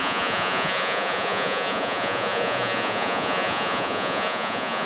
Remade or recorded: remade